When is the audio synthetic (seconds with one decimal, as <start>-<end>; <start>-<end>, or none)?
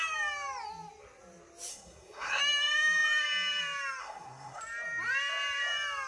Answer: 1.7-2.4; 4.0-4.6